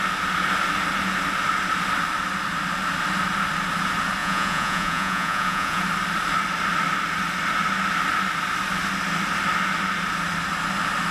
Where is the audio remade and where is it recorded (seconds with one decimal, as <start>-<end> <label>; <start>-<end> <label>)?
0.0-4.2 recorded; 4.2-5.8 remade; 5.8-11.1 recorded